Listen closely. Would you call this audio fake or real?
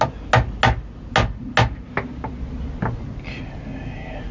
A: real